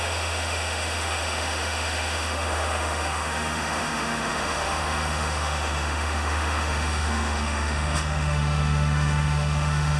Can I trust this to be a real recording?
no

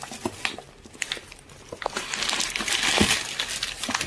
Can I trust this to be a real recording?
yes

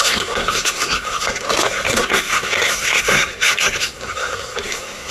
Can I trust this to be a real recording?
no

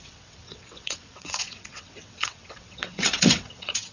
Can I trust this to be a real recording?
no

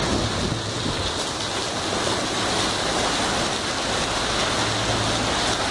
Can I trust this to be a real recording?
yes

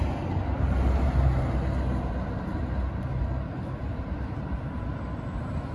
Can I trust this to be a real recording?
yes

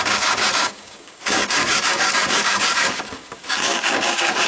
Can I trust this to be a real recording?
no